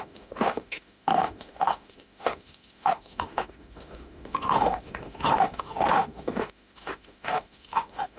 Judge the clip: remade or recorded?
remade